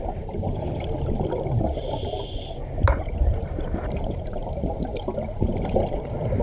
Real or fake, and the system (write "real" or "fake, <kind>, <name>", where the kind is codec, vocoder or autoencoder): fake, vocoder, BigVGAN v2